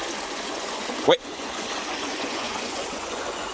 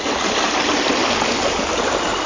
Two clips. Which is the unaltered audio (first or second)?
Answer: second